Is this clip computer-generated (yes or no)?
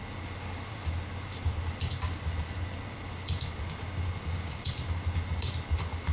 no